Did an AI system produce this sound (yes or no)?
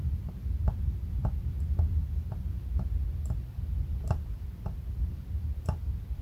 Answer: yes